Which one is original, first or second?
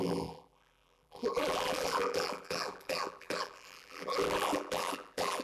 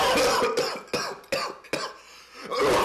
second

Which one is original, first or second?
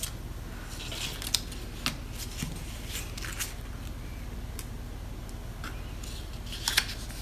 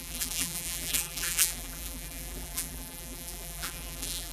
first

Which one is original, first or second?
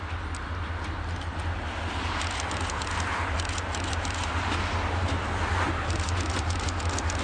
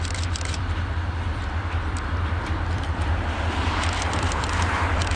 first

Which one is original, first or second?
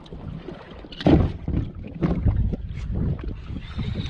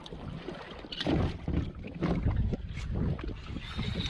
second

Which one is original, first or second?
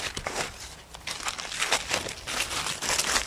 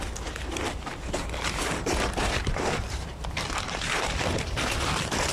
first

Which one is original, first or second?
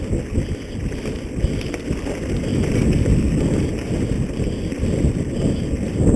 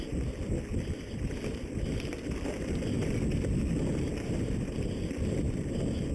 first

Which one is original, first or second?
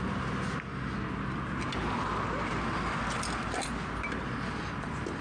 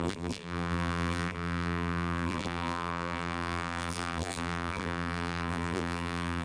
first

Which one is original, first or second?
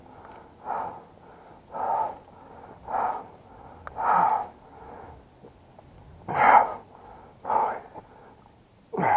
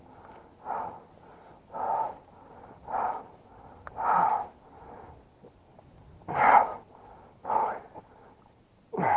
first